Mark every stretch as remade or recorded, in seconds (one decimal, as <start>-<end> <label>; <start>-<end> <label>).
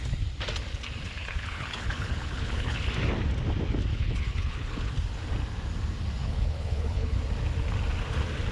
0.0-1.2 recorded; 1.2-2.9 remade; 2.9-3.9 recorded; 3.9-4.9 remade; 4.9-6.2 recorded; 6.2-7.2 remade; 7.2-8.5 recorded